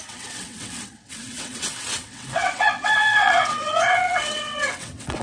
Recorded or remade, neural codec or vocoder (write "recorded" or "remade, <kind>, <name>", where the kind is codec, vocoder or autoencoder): remade, vocoder, WaveNeXt